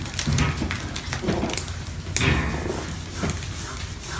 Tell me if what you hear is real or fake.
real